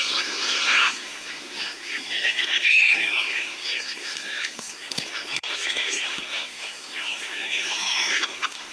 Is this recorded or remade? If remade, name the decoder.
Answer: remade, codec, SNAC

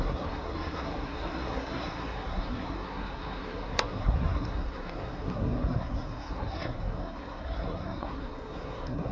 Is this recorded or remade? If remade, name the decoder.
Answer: remade, codec, SNAC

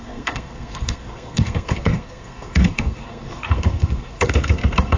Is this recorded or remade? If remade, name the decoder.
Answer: remade, codec, SNAC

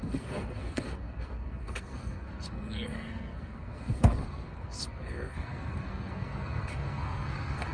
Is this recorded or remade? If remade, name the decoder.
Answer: remade, codec, SNAC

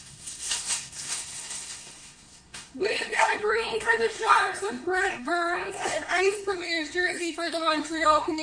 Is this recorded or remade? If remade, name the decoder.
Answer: remade, codec, SNAC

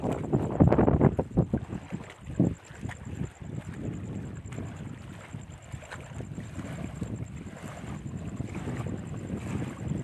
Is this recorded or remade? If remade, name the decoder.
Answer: recorded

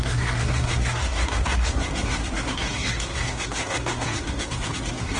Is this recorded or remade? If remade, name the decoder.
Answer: remade, codec, SNAC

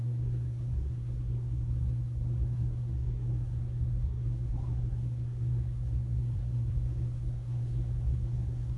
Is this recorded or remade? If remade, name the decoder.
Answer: remade, codec, SNAC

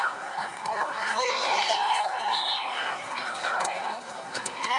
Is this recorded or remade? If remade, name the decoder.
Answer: remade, codec, SNAC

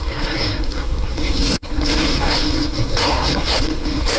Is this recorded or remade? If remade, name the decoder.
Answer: remade, codec, SNAC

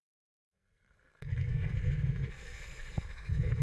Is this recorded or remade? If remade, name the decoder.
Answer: remade, codec, SNAC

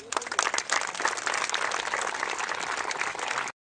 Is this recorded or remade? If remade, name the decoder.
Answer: recorded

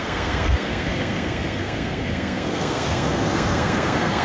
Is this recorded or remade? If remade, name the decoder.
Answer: remade, codec, SNAC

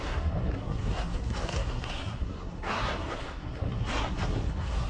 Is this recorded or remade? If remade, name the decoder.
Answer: remade, codec, SNAC